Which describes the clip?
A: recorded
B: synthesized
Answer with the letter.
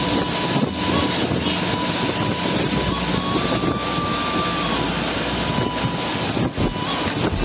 A